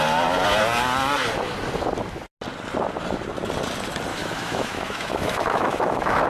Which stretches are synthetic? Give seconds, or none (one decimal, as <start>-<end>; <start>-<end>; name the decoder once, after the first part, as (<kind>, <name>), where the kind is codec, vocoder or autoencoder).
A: 4.1-6.3 (autoencoder, DAC-VAE)